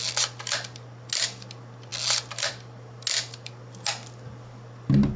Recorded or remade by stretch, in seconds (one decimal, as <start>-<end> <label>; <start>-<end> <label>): 0.0-5.2 recorded